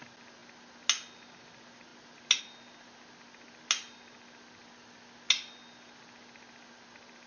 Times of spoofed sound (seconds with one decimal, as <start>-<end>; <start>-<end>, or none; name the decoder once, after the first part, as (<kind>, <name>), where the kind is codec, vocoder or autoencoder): none